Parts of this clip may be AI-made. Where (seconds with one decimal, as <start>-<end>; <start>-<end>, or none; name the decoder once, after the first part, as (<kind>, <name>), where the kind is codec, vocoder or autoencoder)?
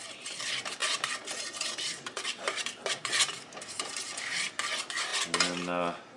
0.8-4.5 (vocoder, BigVGAN v2)